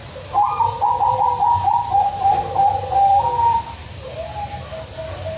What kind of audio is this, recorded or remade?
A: remade